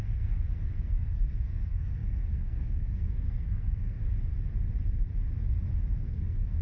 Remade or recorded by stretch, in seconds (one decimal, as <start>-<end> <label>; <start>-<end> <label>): 0.0-4.0 remade; 4.0-6.0 recorded; 6.0-6.6 remade